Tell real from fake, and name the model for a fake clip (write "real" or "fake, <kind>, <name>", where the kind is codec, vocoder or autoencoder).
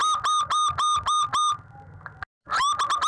real